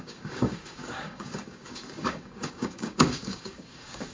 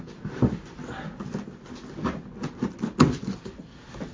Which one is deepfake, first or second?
first